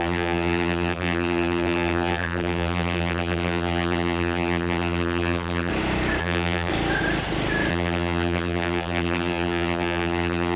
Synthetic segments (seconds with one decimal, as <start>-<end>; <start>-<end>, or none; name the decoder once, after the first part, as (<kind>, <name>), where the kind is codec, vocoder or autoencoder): 0.0-5.7 (vocoder, BigVGAN v2); 6.2-6.7; 7.7-10.6